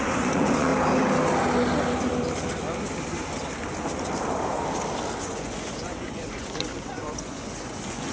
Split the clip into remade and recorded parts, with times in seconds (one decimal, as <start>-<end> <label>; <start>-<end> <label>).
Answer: 0.0-0.7 remade; 0.7-5.2 recorded; 5.2-8.1 remade

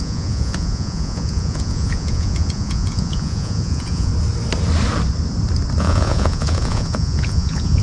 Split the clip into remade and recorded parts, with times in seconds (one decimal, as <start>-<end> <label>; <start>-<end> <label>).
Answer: 0.0-4.1 remade; 4.1-5.8 recorded; 5.8-7.8 remade

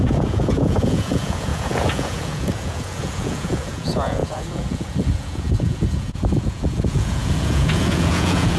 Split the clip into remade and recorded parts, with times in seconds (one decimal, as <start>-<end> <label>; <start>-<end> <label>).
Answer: 0.0-8.6 remade